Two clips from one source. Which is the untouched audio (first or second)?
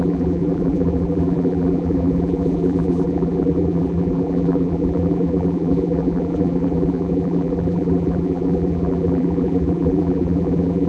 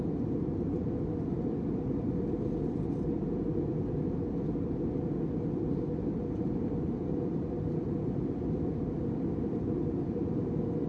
second